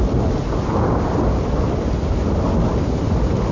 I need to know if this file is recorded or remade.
recorded